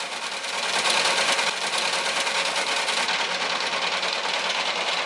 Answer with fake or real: real